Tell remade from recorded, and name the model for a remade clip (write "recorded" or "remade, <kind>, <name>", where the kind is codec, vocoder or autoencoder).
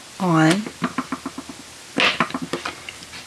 recorded